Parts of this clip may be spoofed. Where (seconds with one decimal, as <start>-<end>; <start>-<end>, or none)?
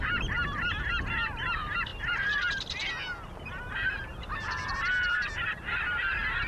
1.9-2.9; 3.5-6.5